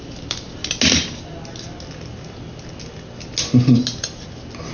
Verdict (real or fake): real